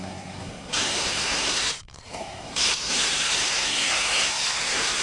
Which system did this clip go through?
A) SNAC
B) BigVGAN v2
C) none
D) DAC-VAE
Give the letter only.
A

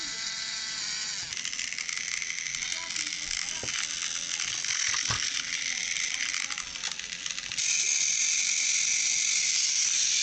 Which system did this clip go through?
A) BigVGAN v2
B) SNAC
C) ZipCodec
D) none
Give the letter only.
D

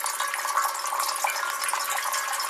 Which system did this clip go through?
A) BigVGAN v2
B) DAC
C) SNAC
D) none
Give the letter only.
D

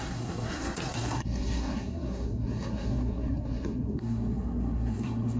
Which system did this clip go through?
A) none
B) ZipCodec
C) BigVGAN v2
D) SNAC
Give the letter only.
D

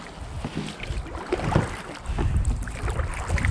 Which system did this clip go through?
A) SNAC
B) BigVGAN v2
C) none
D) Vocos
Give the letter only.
C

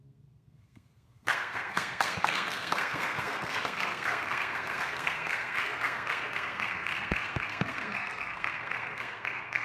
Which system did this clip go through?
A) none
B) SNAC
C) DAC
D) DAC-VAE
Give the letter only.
B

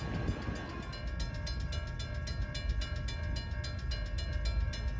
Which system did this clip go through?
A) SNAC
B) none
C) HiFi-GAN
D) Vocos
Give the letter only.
B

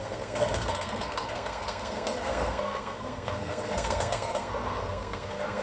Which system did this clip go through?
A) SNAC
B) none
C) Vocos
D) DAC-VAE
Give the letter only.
A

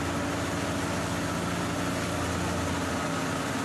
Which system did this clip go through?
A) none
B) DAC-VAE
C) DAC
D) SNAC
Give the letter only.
A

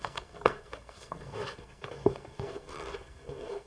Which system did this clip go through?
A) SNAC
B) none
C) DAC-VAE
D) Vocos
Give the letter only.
A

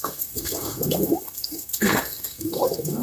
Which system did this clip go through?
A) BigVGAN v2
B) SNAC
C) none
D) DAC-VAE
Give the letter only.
B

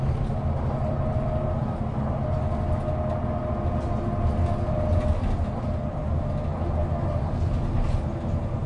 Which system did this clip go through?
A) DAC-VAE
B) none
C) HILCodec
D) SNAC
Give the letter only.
B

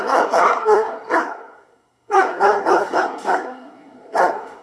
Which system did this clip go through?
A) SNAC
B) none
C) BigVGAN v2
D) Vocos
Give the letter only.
A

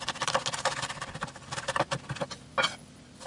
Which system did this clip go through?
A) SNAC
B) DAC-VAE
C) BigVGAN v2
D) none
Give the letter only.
D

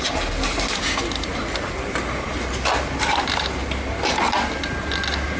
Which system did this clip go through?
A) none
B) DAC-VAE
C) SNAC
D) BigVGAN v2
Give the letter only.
A